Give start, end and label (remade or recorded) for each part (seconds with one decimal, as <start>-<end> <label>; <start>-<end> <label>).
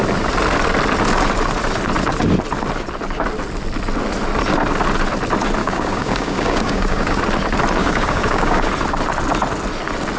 0.0-5.6 recorded; 5.6-7.2 remade; 7.2-7.8 recorded; 7.8-8.7 remade; 8.7-10.2 recorded